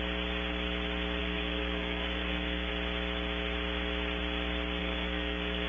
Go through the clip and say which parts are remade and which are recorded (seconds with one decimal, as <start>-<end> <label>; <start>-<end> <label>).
0.0-1.2 recorded; 1.2-2.7 remade; 2.7-4.8 recorded; 4.8-5.7 remade